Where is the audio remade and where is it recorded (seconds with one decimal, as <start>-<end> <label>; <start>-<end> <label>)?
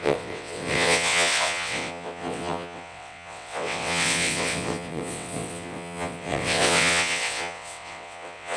0.0-8.6 remade